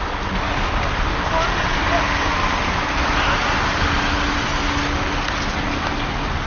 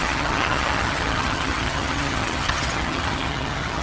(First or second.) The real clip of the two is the first